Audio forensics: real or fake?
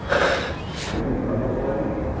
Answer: real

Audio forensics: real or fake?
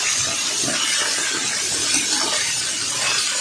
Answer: real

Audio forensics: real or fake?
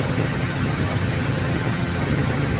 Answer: fake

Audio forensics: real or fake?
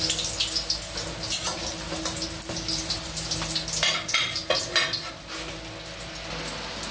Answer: real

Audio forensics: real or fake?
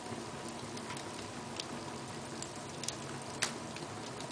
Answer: real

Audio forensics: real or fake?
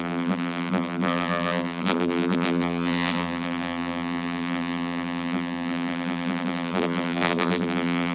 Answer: fake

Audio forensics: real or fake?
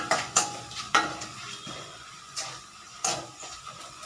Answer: fake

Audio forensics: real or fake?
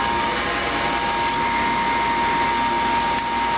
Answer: real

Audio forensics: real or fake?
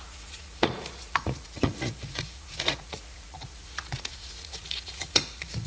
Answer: fake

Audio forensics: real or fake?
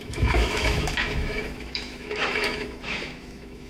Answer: fake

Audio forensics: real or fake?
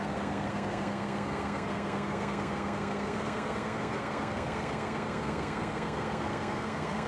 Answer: fake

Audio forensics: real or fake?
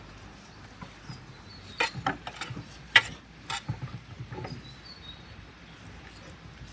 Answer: real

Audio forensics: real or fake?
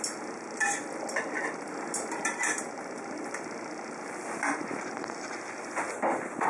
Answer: real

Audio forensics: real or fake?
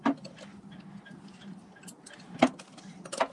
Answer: real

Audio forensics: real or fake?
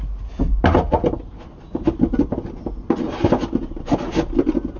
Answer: real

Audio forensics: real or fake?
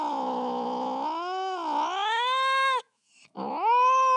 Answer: fake